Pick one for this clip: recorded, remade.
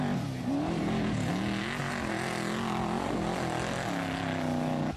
recorded